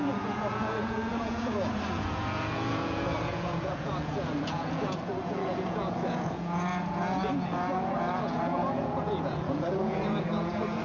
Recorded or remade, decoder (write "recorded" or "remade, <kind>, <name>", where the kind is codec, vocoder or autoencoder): remade, vocoder, Vocos